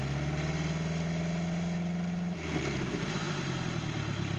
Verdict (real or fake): real